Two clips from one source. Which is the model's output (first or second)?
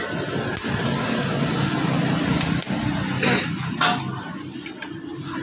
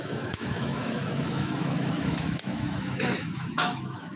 second